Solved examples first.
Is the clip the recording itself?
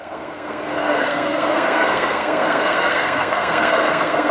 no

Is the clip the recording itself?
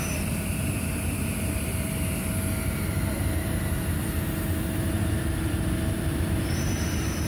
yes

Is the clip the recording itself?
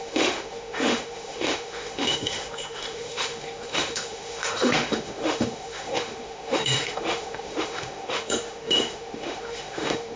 no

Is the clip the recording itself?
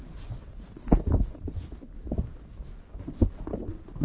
yes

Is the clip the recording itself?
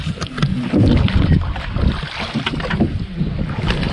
yes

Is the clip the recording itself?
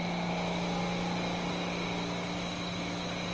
yes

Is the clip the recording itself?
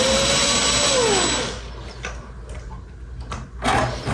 yes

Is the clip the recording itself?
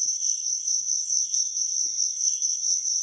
no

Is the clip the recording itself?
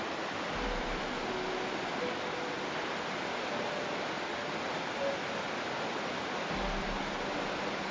yes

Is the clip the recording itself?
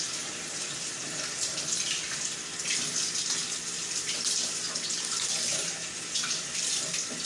yes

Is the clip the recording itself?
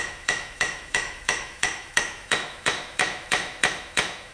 no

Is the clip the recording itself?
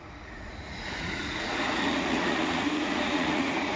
no